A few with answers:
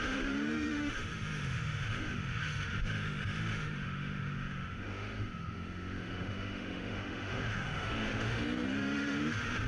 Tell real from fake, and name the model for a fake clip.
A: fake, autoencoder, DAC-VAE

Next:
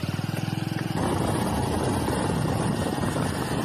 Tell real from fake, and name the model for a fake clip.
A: real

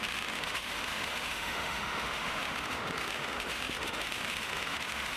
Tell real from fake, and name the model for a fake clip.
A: fake, autoencoder, DAC-VAE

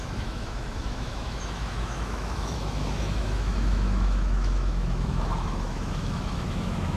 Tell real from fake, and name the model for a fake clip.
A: fake, autoencoder, DAC-VAE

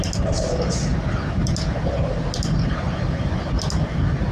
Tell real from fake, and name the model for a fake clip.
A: real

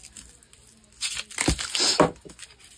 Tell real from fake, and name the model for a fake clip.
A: real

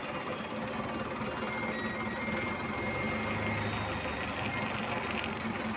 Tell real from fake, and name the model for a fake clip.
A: real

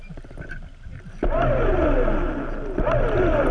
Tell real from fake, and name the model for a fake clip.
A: real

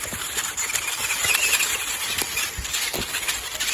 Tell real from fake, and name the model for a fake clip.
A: real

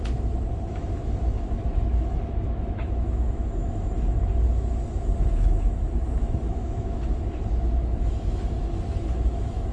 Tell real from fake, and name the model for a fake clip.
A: fake, autoencoder, DAC-VAE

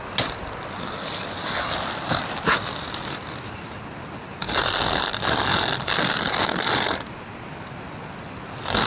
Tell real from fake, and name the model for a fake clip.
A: real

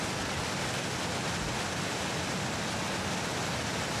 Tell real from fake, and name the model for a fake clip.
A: real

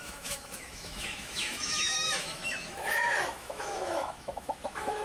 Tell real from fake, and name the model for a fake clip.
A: fake, autoencoder, DAC-VAE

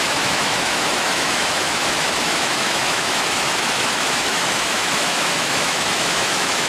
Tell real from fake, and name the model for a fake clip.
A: fake, autoencoder, DAC-VAE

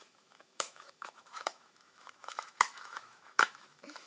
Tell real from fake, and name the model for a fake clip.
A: fake, autoencoder, DAC-VAE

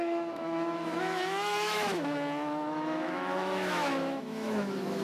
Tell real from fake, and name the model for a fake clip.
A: fake, autoencoder, DAC-VAE